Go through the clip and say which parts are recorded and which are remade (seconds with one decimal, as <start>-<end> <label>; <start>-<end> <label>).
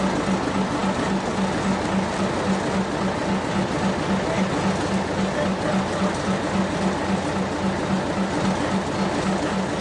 0.0-9.8 recorded